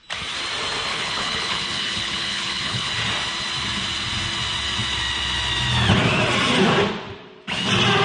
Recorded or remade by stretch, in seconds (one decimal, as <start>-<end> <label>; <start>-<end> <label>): 0.0-0.9 recorded; 0.9-2.9 remade; 2.9-8.0 recorded